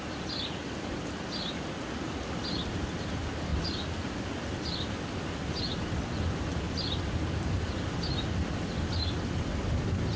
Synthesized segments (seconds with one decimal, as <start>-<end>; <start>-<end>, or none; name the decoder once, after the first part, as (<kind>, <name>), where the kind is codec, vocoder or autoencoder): none